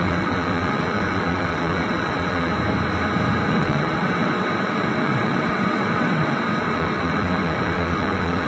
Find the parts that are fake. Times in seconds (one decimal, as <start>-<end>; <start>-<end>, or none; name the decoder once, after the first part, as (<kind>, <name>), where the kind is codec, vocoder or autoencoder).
0.0-2.5 (vocoder, WaveNeXt); 3.5-8.5